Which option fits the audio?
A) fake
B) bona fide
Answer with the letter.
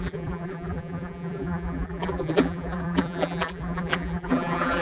A